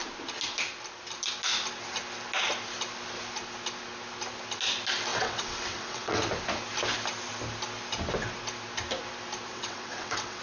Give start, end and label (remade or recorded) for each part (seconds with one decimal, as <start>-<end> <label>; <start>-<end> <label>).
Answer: 0.0-5.1 recorded; 5.1-6.2 remade; 6.2-9.5 recorded; 9.5-10.4 remade